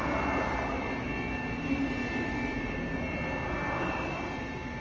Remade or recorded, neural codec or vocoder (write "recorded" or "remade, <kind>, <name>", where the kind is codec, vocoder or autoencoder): recorded